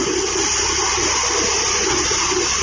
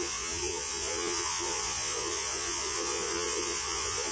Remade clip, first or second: second